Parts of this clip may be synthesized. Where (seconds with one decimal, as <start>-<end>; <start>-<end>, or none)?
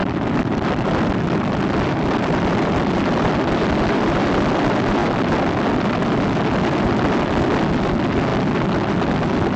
0.0-4.3